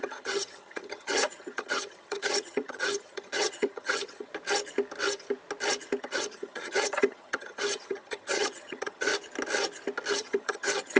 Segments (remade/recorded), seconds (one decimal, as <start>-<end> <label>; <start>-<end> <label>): 0.0-4.3 remade; 4.3-6.0 recorded; 6.0-9.1 remade; 9.1-10.1 recorded; 10.1-11.0 remade

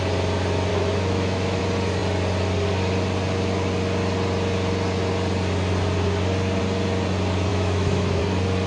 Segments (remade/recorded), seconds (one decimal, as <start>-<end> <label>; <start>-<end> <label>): 0.0-0.7 recorded; 0.7-1.6 remade; 1.6-7.5 recorded; 7.5-8.2 remade; 8.2-8.7 recorded

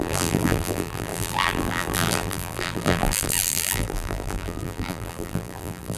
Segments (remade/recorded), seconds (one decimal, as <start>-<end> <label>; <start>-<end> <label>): 0.0-6.0 remade

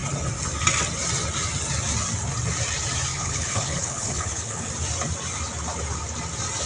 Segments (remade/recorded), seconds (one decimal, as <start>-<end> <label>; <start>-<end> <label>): 0.0-3.1 recorded; 3.1-4.7 remade; 4.7-6.7 recorded

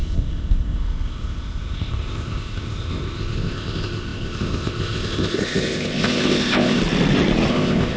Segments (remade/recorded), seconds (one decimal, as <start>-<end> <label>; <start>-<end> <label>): 0.0-6.8 remade; 6.8-7.5 recorded; 7.5-8.0 remade

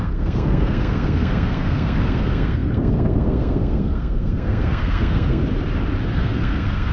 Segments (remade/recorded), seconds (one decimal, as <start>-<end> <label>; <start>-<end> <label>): 0.0-5.4 remade; 5.4-6.1 recorded; 6.1-6.9 remade

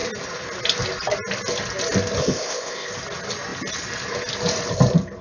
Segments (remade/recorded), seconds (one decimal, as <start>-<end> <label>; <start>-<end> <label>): 0.0-2.2 recorded; 2.2-2.9 remade; 2.9-5.2 recorded